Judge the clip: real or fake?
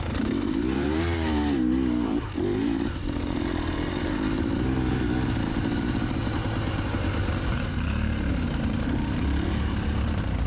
fake